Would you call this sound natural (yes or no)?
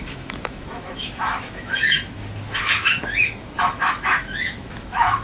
no